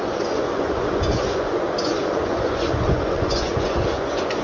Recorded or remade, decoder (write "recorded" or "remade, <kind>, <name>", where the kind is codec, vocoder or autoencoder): remade, vocoder, Vocos